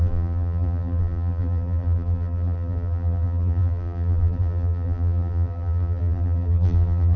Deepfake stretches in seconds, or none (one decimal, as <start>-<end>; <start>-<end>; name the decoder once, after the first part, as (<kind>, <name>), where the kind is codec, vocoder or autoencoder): 0.0-7.2 (vocoder, BigVGAN v2)